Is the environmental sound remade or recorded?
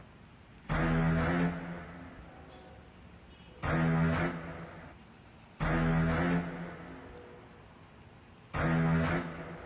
recorded